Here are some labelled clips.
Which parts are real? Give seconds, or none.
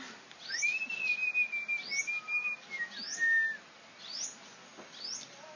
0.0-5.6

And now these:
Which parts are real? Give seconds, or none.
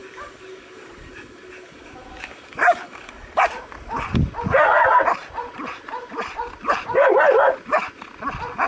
3.4-8.7